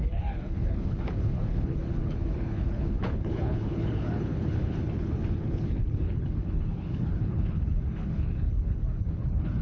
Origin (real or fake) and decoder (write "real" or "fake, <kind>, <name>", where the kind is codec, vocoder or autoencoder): fake, codec, HILCodec